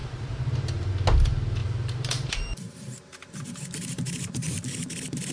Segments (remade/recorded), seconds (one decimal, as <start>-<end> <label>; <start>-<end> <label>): 0.0-0.9 remade; 0.9-1.6 recorded; 1.6-4.7 remade; 4.7-5.3 recorded